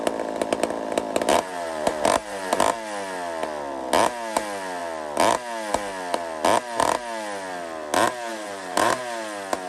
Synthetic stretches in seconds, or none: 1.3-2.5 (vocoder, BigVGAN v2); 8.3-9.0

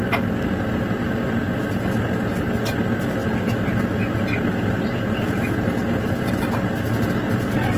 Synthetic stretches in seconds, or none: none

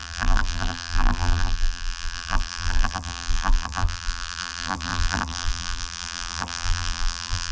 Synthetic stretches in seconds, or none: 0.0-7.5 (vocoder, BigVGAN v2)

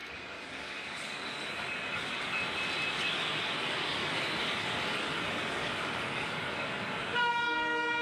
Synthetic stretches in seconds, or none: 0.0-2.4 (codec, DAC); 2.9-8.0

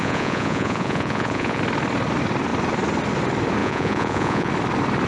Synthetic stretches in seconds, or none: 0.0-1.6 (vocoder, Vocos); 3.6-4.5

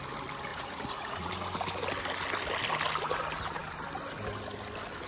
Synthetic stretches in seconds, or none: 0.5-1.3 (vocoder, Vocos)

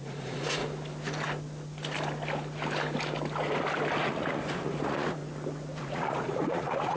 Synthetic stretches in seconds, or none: 0.0-0.6 (vocoder, Vocos); 4.0-5.2; 5.8-7.0